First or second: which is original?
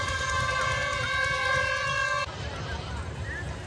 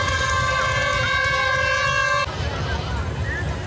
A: second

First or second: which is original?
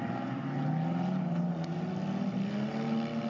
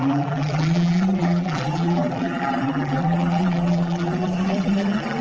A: first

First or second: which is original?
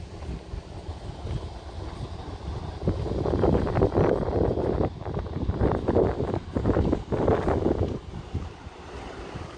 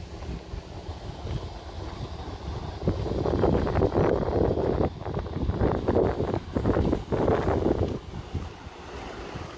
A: second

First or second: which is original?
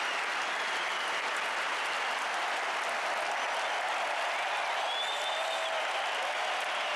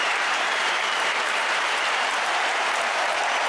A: first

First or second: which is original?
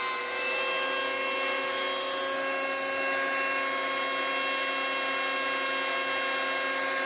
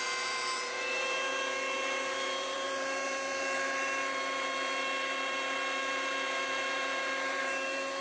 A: first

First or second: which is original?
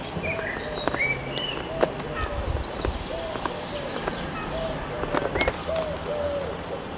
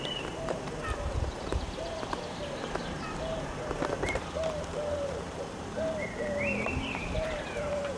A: first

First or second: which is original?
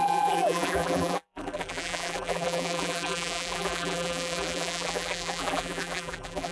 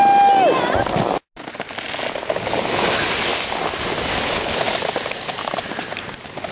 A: second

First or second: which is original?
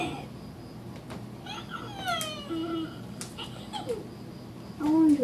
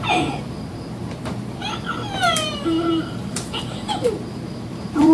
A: first